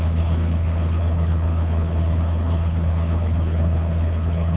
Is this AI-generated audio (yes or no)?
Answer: yes